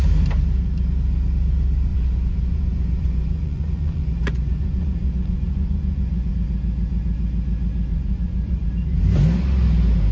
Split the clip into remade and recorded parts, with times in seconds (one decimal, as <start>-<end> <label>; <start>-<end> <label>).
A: 0.0-1.9 recorded; 1.9-6.3 remade; 6.3-7.9 recorded; 7.9-8.7 remade; 8.7-10.1 recorded